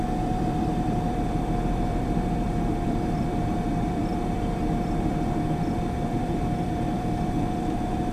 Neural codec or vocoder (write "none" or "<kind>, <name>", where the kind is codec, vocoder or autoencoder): vocoder, BigVGAN v2